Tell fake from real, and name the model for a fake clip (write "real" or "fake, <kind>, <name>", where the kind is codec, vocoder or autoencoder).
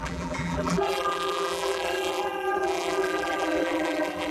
fake, vocoder, BigVGAN v2